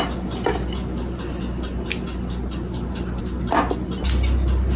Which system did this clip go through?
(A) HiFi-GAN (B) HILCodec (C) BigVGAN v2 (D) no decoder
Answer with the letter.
D